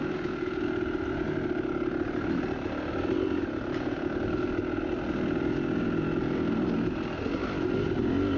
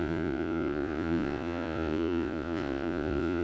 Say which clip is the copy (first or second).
second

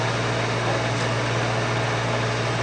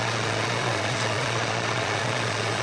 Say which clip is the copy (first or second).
second